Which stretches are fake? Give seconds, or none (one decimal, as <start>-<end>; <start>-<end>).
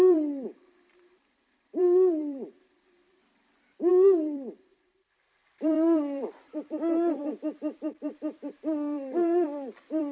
0.0-3.2; 3.9-10.1